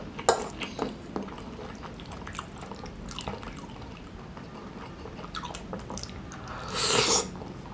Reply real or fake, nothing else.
real